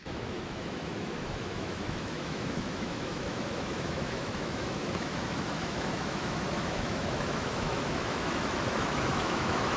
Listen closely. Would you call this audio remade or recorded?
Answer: remade